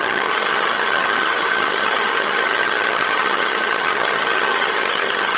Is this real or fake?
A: fake